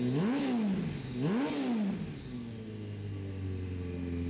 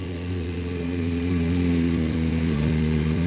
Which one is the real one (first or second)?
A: first